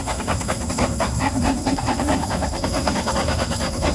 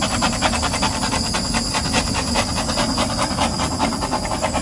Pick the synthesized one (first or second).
first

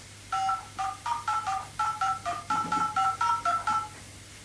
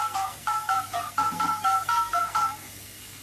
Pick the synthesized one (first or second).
second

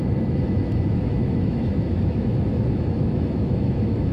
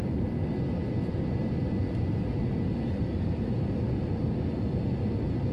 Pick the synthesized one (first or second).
first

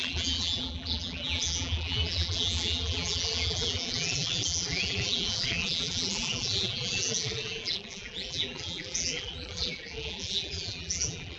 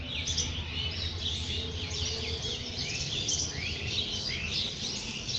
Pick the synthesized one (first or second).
first